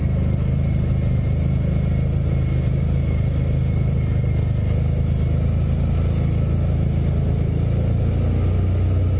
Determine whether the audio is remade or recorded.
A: recorded